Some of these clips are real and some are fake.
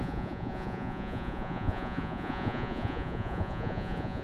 fake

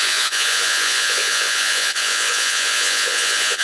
fake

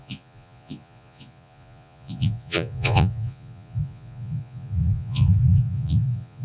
fake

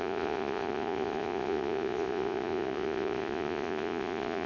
fake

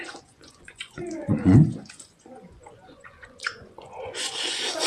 fake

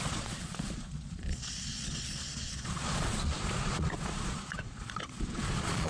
fake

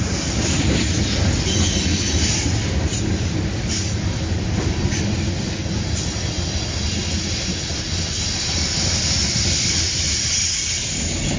real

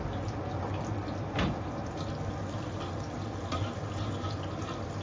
real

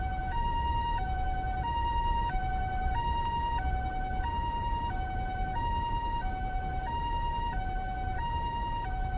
real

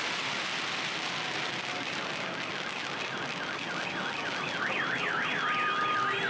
real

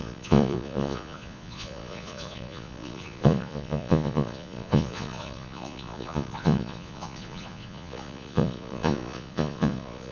fake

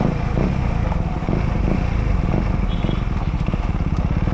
real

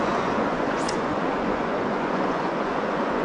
fake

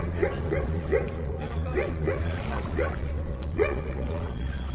fake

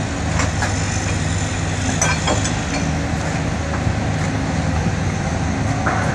real